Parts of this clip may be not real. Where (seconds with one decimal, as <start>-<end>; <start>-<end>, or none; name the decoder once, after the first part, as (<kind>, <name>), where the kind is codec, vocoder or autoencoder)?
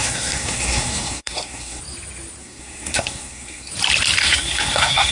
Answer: 0.0-1.8 (codec, SNAC); 2.4-3.7; 4.2-5.1